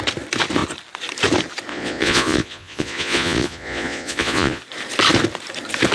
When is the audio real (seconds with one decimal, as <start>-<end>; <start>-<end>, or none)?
0.0-1.7; 4.6-5.9